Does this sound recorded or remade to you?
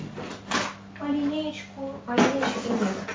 recorded